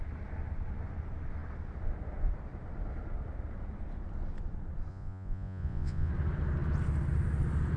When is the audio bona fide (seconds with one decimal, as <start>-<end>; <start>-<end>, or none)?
0.0-4.9; 6.1-7.8